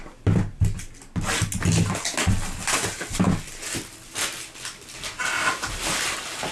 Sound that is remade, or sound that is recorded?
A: recorded